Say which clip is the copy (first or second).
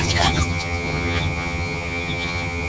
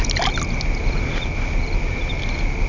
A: first